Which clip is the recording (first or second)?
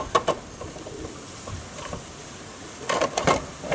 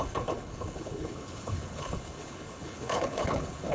first